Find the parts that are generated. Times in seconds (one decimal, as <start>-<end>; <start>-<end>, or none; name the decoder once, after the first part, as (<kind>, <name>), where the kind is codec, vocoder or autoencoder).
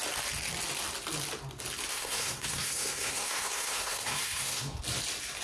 1.9-4.8 (codec, SNAC)